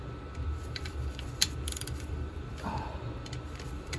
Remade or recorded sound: remade